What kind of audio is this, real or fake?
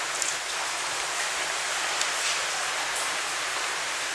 real